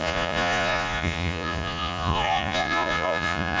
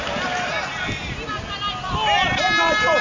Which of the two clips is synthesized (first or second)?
first